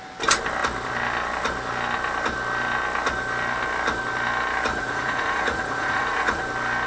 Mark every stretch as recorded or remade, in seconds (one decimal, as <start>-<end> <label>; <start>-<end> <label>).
0.0-4.7 recorded; 4.7-6.4 remade; 6.4-6.9 recorded

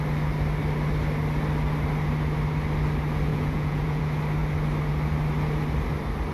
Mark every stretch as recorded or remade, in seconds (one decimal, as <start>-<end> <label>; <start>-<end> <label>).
0.0-3.3 recorded; 3.3-4.0 remade; 4.0-6.3 recorded